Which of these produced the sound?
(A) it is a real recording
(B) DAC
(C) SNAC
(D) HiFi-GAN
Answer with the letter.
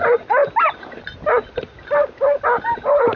A